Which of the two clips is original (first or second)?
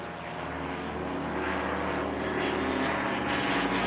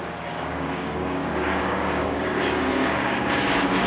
first